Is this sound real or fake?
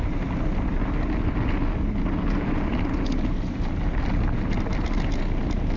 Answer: real